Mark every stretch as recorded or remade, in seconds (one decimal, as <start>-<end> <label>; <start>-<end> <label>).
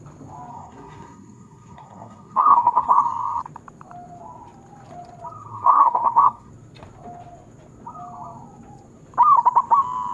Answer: 0.0-0.5 recorded; 0.5-3.4 remade; 3.4-5.5 recorded; 5.5-6.5 remade; 6.5-10.1 recorded